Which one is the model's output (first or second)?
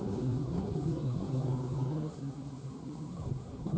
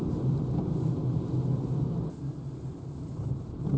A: first